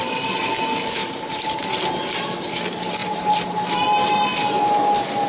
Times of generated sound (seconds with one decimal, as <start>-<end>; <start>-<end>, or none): 1.0-1.6; 3.0-3.5

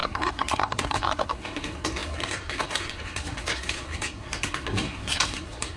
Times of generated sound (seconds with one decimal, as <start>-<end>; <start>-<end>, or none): 0.0-5.8